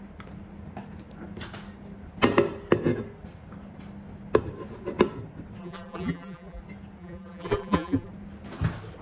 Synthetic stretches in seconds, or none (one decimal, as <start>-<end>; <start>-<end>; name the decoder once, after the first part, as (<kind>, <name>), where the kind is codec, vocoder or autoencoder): 5.6-6.6 (vocoder, BigVGAN v2); 7.0-8.1